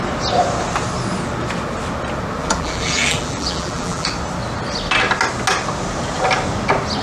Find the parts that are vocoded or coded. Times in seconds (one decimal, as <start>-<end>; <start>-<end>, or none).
2.4-4.1